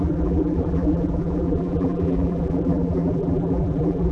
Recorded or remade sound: remade